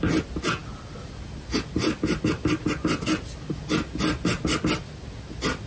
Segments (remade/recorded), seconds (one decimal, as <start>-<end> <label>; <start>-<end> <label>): 0.0-5.7 recorded